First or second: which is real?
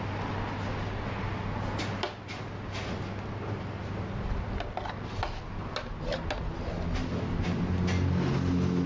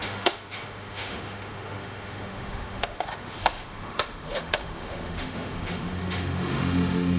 first